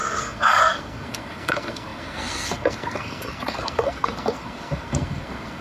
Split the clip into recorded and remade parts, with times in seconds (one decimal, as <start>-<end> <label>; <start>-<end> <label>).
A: 0.0-5.6 remade